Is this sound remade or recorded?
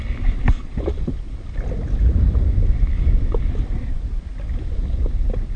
recorded